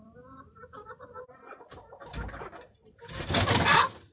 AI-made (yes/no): yes